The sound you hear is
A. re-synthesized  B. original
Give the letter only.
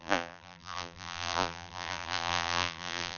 A